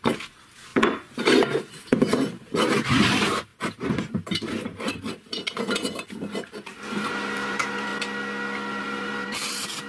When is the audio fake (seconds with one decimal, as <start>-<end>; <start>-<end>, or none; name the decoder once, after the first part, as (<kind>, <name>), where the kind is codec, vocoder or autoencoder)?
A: 0.0-0.7 (vocoder, BigVGAN v2); 1.7-3.5; 6.5-7.9; 8.8-9.9